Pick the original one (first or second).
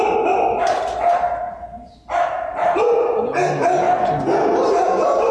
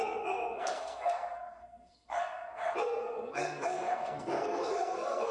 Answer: first